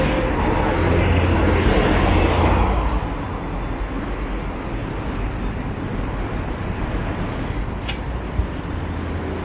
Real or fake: real